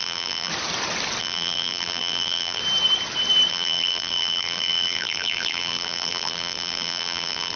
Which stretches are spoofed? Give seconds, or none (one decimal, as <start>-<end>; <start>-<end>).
0.0-0.5; 1.2-2.6; 3.5-7.6